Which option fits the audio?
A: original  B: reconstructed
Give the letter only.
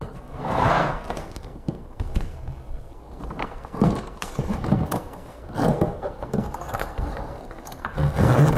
B